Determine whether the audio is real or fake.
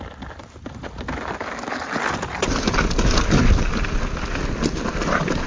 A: real